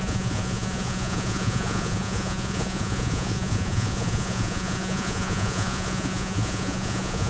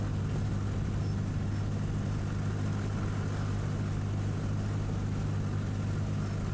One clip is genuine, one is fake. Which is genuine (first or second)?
second